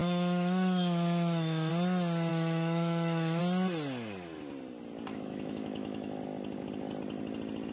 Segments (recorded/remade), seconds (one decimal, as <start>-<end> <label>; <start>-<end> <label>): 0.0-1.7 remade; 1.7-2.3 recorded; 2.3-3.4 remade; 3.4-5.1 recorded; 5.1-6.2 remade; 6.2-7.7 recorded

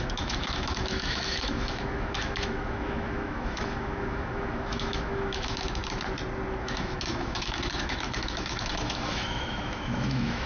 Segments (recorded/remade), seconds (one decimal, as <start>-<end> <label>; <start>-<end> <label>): 0.0-5.8 remade; 5.8-6.6 recorded; 6.6-10.5 remade

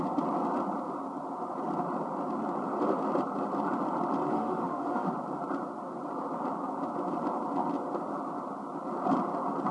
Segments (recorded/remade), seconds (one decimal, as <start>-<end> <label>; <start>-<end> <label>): 0.0-4.3 recorded; 4.3-5.1 remade; 5.1-9.7 recorded